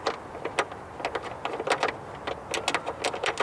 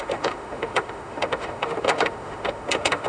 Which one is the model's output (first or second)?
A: second